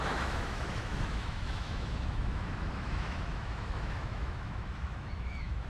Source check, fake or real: fake